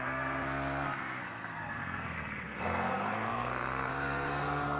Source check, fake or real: fake